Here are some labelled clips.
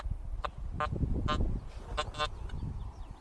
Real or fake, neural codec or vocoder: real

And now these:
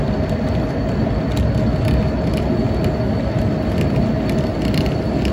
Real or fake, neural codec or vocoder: real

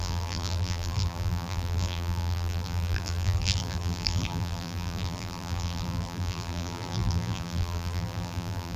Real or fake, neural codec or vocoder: fake, vocoder, BigVGAN v2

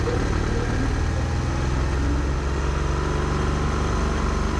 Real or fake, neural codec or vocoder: real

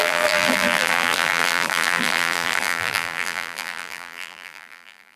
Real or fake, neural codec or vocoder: fake, vocoder, BigVGAN v2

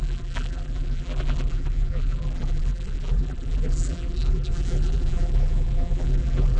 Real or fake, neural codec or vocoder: fake, vocoder, BigVGAN v2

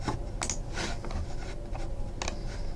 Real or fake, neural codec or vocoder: real